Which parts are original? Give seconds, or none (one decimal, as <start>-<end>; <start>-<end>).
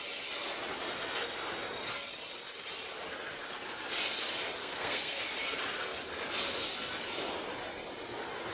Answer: 0.0-4.6; 5.2-8.5